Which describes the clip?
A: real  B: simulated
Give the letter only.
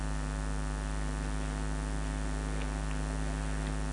A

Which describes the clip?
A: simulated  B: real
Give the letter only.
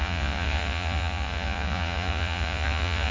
A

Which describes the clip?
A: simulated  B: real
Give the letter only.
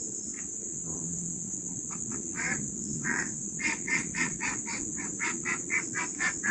A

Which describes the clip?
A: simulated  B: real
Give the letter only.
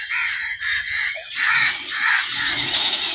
A